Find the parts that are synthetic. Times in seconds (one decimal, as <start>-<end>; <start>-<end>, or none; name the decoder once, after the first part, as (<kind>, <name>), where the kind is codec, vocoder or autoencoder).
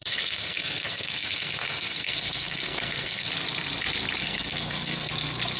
0.0-3.3 (codec, SNAC); 4.2-5.1